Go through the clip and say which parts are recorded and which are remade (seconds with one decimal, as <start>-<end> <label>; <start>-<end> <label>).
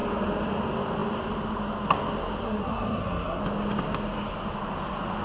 0.0-2.4 recorded; 2.4-3.4 remade; 3.4-5.2 recorded